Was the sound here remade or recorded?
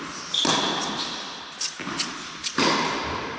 remade